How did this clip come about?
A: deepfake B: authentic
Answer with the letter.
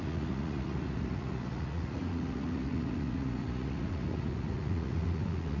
A